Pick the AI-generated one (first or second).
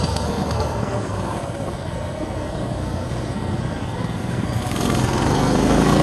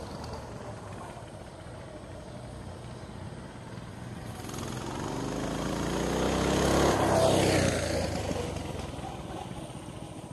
first